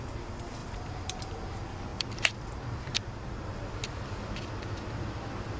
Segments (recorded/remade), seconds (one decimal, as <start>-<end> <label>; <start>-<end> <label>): 0.0-0.6 recorded; 0.6-1.3 remade; 1.3-1.9 recorded; 1.9-4.5 remade; 4.5-5.6 recorded